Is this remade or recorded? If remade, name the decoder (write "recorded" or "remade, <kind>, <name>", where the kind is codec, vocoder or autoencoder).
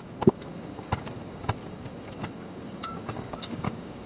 remade, codec, DAC